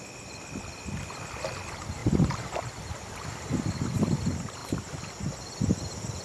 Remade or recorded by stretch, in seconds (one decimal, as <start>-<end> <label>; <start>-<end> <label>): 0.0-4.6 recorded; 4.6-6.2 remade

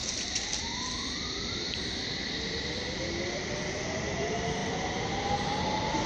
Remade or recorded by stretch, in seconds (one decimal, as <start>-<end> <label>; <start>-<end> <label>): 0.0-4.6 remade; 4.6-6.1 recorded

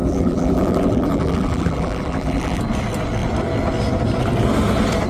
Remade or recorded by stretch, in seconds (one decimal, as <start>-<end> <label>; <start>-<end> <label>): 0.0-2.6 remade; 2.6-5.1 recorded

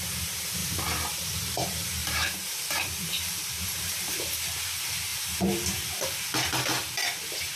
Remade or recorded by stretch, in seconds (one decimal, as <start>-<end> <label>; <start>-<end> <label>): 0.0-0.6 recorded; 0.6-1.3 remade; 1.3-2.0 recorded; 2.0-4.1 remade; 4.1-5.1 recorded; 5.1-6.3 remade; 6.3-7.5 recorded

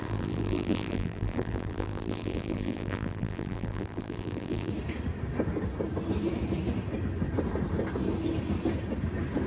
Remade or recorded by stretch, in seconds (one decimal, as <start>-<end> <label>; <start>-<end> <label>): 0.0-4.7 remade; 4.7-9.5 recorded